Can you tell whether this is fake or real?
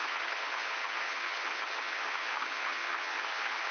fake